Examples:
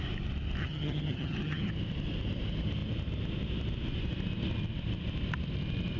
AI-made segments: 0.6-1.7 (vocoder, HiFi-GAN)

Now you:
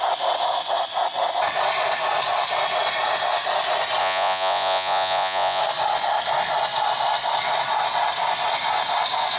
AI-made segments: 4.0-5.6 (vocoder, Vocos)